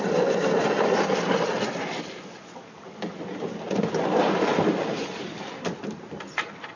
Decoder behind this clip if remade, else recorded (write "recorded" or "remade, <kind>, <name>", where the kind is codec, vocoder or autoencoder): recorded